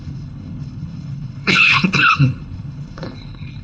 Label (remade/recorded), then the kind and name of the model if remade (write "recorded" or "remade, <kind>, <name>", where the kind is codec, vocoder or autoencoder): remade, codec, HILCodec